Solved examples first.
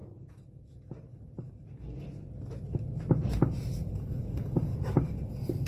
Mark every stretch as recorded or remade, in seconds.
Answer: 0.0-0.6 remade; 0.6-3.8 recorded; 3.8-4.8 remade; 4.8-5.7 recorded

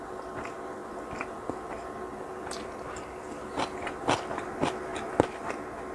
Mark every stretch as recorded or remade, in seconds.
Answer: 0.0-5.9 recorded

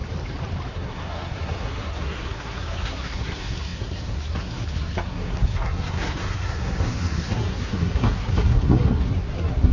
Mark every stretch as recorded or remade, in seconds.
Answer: 0.0-0.7 recorded; 0.7-9.7 remade

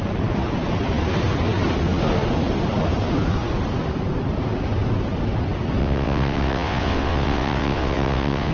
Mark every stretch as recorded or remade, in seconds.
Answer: 0.0-5.8 recorded; 5.8-8.5 remade

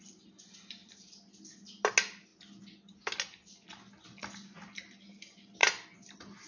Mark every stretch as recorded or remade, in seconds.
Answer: 0.0-6.5 recorded

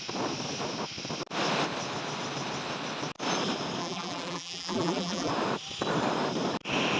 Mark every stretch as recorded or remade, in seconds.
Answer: 0.0-3.8 recorded; 3.8-5.3 remade; 5.3-7.0 recorded